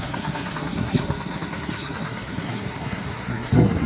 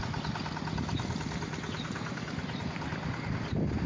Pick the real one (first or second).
second